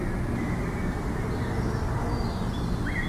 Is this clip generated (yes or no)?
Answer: no